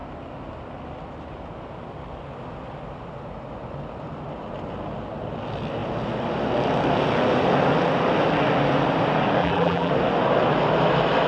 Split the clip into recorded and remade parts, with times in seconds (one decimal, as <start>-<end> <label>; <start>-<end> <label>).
0.0-9.4 recorded; 9.4-9.9 remade; 9.9-11.3 recorded